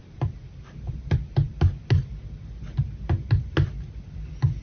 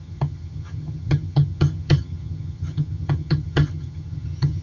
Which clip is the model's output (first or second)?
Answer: second